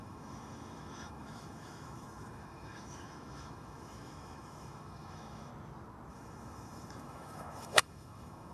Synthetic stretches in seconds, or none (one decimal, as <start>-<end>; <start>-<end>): 0.0-5.5; 6.1-8.5